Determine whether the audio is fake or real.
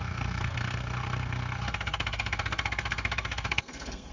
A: fake